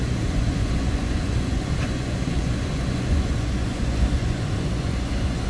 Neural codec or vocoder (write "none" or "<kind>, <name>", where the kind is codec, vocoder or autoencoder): vocoder, Vocos